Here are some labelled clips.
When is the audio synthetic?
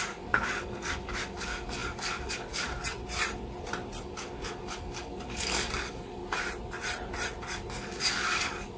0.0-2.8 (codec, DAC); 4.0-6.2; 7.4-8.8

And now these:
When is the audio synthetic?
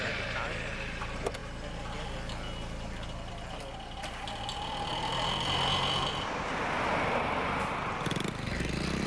none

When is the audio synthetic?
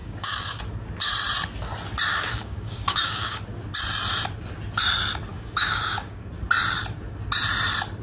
0.0-0.6 (codec, DAC); 2.1-3.4; 5.3-6.3